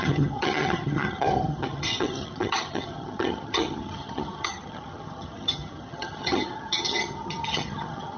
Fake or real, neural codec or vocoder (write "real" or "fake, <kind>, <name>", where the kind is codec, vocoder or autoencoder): fake, vocoder, HiFi-GAN